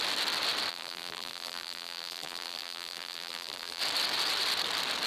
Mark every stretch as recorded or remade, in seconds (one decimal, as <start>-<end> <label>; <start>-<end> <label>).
0.0-0.7 recorded; 0.7-3.8 remade; 3.8-5.1 recorded